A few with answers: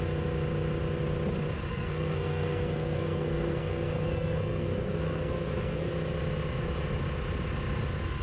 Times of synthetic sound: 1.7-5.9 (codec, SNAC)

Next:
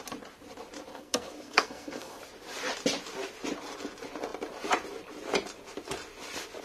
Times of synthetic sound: 0.9-2.2 (codec, SNAC)

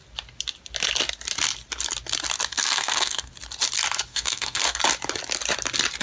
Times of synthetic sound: 2.5-3.3 (codec, SNAC); 4.1-4.8

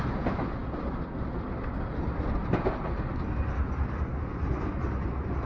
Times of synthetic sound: none

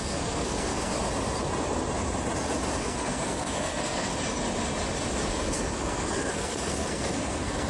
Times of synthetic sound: 0.0-0.9 (codec, SNAC); 2.8-4.1; 5.3-7.7